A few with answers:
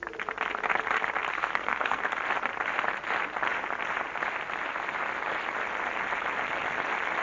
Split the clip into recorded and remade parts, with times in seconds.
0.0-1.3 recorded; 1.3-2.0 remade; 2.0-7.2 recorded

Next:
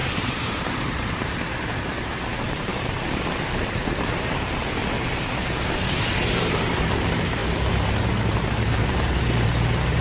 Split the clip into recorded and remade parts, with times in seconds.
0.0-4.8 remade; 4.8-5.9 recorded; 5.9-7.4 remade; 7.4-8.0 recorded; 8.0-10.0 remade

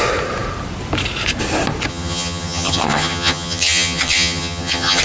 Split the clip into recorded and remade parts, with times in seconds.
0.0-1.9 recorded; 1.9-5.0 remade

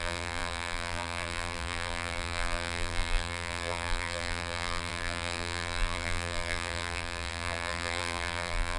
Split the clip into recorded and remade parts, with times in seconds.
0.0-8.8 remade

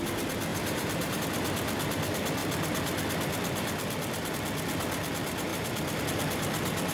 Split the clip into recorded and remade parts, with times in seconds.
0.0-0.5 recorded; 0.5-1.2 remade; 1.2-6.9 recorded

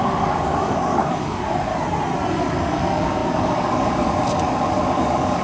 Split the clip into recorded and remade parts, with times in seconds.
0.0-1.7 remade; 1.7-2.3 recorded; 2.3-5.4 remade